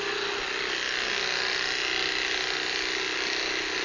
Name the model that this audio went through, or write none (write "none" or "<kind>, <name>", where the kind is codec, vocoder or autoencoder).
none